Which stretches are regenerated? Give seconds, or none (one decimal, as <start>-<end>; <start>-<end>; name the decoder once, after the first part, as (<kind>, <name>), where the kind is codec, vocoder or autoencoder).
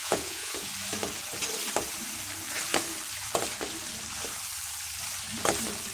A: 0.0-0.7 (vocoder, Vocos)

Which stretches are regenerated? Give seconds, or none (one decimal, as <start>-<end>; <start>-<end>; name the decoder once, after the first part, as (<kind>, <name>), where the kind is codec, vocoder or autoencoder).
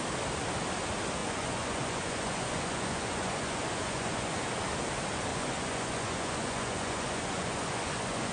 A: 1.2-4.5 (vocoder, Vocos); 5.3-8.3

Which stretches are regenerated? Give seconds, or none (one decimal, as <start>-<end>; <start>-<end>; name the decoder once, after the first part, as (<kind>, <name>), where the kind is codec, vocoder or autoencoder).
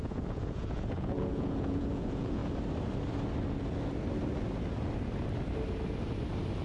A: 0.0-2.4 (vocoder, Vocos)